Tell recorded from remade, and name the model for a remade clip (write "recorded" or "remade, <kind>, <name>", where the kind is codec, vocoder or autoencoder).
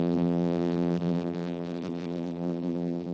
remade, vocoder, BigVGAN v2